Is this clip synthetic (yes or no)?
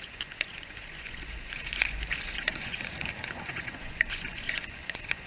yes